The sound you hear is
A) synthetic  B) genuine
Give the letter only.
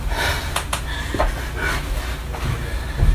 B